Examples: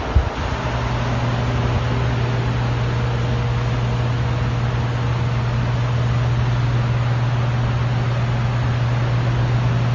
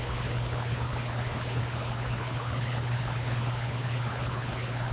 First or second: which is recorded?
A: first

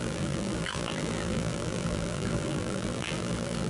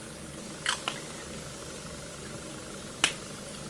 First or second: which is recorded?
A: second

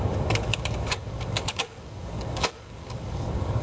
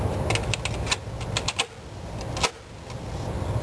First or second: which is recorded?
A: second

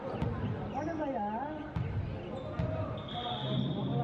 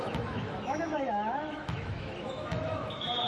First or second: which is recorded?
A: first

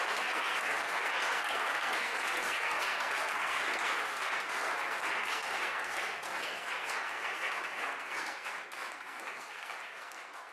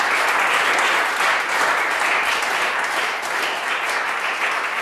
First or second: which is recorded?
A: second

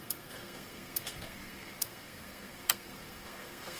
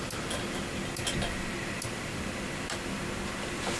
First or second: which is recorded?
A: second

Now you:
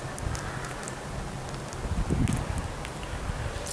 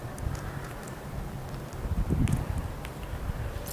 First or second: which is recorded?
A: first